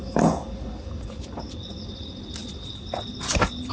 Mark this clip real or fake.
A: real